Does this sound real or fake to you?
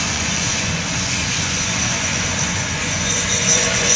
fake